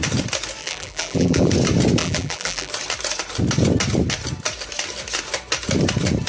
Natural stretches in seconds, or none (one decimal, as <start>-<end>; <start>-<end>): 0.0-0.6; 1.5-2.0; 2.7-6.3